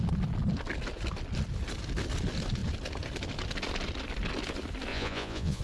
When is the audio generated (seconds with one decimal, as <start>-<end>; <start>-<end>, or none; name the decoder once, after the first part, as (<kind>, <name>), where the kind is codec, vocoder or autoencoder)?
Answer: 4.9-5.6 (vocoder, Vocos)